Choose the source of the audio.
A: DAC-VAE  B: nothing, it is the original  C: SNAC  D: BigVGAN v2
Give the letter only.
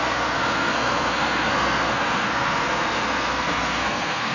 C